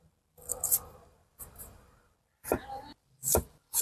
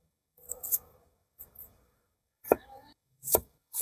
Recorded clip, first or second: first